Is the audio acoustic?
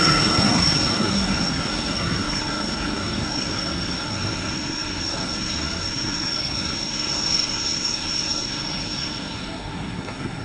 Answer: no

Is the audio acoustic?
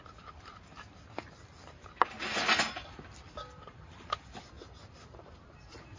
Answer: yes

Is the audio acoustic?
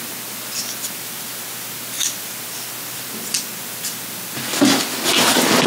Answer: yes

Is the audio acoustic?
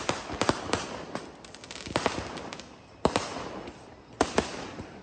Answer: yes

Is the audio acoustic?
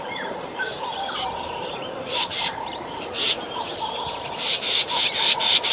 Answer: no